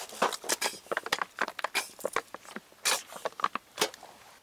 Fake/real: real